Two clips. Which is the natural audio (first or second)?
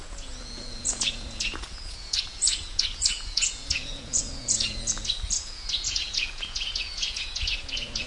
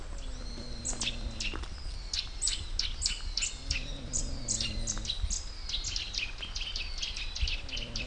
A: second